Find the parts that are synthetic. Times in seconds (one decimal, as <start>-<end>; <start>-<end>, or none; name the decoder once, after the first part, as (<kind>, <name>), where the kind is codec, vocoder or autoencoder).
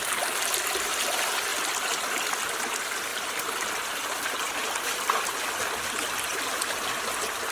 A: none